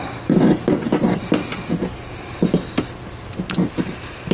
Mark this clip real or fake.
real